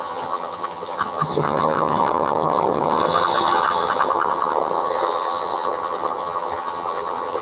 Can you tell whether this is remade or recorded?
remade